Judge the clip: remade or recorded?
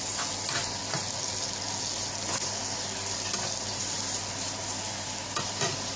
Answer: recorded